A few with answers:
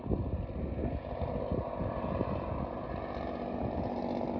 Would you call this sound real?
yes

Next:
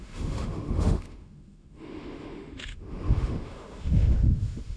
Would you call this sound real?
no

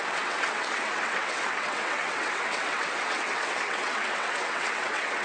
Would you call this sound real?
no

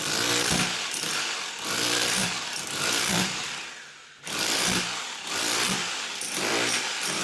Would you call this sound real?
no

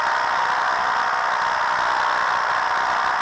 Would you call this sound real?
yes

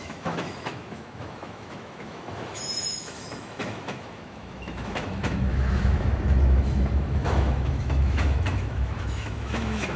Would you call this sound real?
no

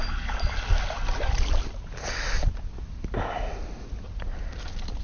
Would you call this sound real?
yes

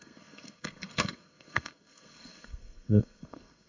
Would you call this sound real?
no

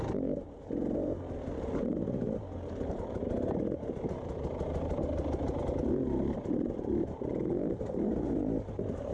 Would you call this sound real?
no